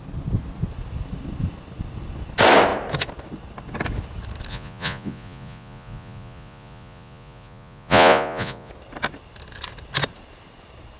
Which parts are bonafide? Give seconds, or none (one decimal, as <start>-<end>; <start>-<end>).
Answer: 0.0-4.5; 8.7-11.0